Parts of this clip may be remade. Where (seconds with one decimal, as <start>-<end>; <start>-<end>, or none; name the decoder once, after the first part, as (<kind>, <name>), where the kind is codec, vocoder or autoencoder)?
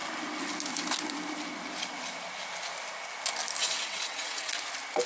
3.6-4.5 (vocoder, WaveNeXt)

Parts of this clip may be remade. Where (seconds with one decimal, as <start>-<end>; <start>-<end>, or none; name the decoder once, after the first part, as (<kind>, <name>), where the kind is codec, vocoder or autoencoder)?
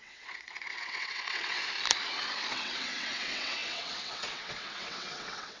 0.0-1.6 (vocoder, WaveNeXt); 2.5-5.6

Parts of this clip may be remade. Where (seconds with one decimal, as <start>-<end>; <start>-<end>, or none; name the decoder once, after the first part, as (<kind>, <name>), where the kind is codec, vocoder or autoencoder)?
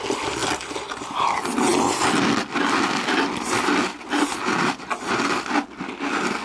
none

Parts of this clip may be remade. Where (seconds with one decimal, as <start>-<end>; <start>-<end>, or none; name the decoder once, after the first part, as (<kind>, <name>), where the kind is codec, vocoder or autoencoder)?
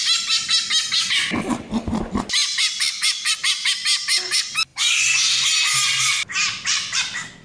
none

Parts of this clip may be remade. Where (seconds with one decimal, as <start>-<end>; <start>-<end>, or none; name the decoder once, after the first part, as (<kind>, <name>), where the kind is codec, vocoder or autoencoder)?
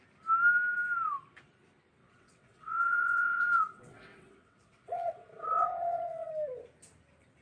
2.0-6.3 (vocoder, WaveNeXt)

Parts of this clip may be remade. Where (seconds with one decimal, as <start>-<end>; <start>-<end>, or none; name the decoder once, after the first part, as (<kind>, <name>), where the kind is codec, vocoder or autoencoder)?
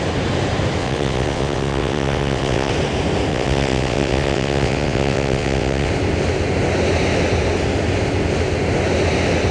0.8-2.7 (vocoder, WaveNeXt); 3.3-5.9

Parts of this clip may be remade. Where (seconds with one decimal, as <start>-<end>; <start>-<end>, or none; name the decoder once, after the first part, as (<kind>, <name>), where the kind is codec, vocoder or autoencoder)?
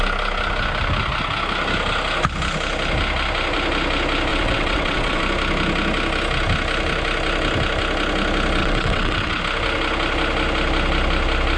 4.3-5.2 (vocoder, WaveNeXt); 8.6-9.4